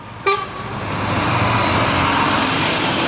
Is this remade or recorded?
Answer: recorded